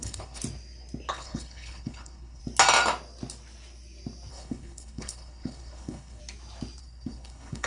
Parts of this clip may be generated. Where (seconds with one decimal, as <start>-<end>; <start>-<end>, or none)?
0.0-0.4; 1.1-2.4; 4.3-6.2; 6.8-7.7